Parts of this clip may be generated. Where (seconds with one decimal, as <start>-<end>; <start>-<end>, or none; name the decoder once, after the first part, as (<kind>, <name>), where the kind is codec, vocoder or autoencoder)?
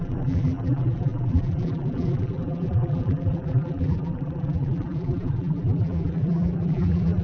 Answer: 0.0-7.2 (vocoder, BigVGAN v2)